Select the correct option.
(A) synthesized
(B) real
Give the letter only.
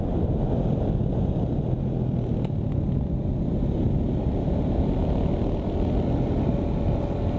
B